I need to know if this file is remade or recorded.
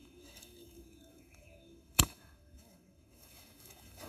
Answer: remade